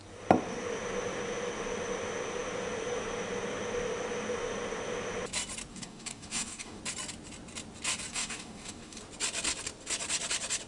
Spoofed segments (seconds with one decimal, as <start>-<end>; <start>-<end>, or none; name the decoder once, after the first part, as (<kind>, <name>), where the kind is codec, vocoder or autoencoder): 5.7-6.8 (codec, DAC); 8.1-9.0